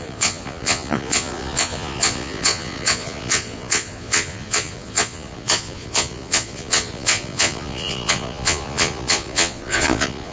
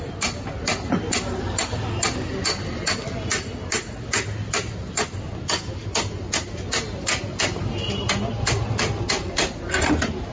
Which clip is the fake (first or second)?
first